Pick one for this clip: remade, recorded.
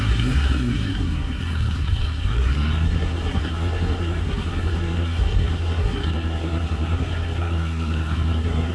remade